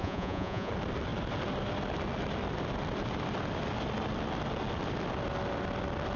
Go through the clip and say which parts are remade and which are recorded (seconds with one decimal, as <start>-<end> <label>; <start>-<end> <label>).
0.0-0.7 remade; 0.7-6.2 recorded